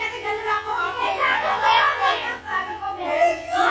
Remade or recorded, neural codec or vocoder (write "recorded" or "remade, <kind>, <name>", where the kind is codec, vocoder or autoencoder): remade, vocoder, WaveNeXt